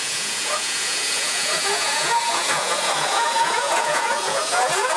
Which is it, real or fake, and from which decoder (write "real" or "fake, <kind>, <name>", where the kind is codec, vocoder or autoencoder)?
fake, vocoder, Vocos